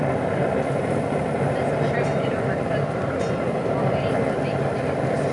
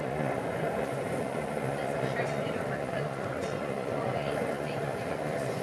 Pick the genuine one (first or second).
first